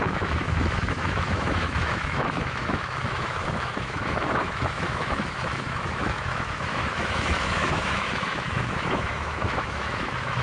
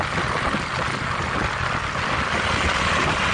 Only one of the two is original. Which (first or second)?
second